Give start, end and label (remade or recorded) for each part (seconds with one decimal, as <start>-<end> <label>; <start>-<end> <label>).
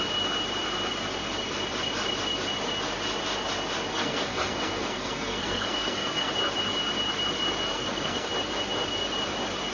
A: 0.0-3.9 recorded; 3.9-6.3 remade; 6.3-7.7 recorded; 7.7-8.3 remade; 8.3-9.7 recorded